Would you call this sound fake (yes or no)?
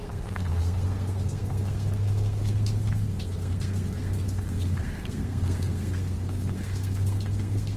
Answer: yes